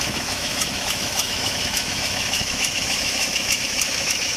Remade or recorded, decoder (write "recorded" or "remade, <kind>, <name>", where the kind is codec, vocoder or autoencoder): remade, autoencoder, DAC-VAE